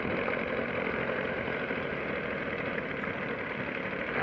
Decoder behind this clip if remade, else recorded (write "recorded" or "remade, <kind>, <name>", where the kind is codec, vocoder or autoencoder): recorded